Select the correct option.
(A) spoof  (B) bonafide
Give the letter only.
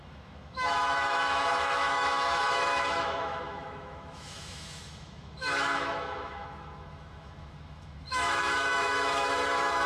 A